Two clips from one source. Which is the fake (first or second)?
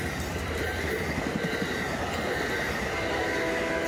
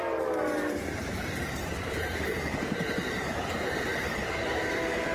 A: second